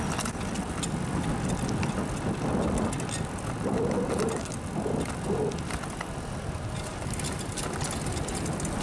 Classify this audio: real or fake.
real